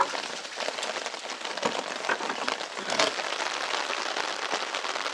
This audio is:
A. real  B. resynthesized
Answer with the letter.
A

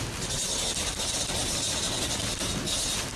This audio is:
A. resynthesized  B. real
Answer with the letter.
B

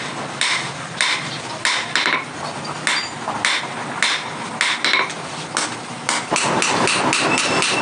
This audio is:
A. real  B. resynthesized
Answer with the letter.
A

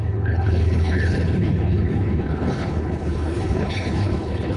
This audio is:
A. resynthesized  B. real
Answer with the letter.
A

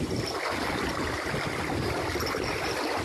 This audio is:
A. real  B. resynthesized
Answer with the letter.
A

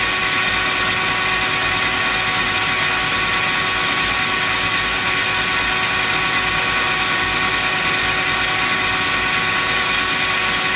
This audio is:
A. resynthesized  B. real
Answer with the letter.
B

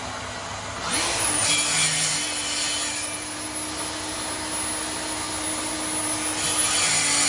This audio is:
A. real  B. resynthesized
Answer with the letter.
A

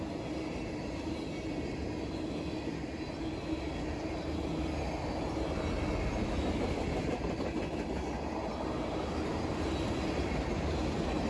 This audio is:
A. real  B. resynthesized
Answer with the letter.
A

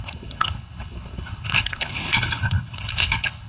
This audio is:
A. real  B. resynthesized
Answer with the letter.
B